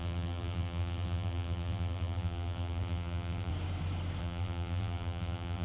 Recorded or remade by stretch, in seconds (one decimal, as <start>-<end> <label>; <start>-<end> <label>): 0.0-3.5 remade; 3.5-4.2 recorded; 4.2-5.6 remade